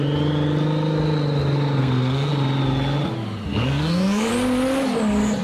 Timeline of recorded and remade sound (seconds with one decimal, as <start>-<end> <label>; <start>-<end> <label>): 0.0-1.8 recorded; 1.8-2.3 remade; 2.3-3.5 recorded; 3.5-4.3 remade; 4.3-5.4 recorded